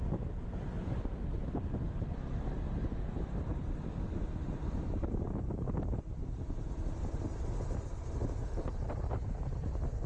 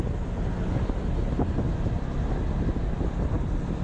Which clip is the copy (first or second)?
first